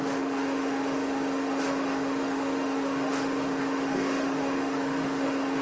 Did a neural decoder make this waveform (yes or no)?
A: yes